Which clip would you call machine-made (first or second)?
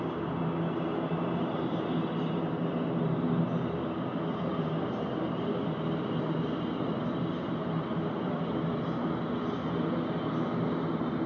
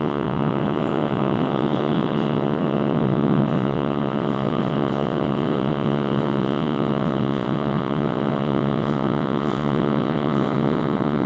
second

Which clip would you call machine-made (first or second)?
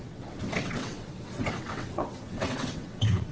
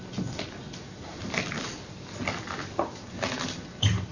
first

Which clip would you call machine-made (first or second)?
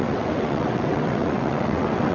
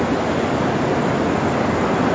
first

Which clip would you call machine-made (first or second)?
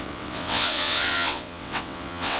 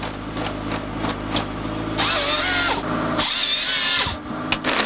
first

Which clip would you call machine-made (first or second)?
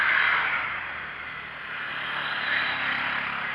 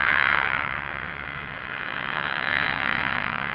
second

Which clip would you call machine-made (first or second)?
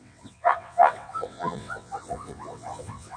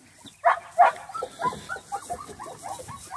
first